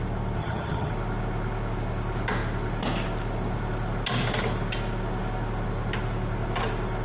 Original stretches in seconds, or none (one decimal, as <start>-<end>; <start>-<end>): 0.0-0.4; 0.9-7.0